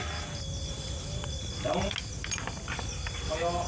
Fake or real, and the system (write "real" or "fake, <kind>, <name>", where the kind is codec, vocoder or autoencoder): real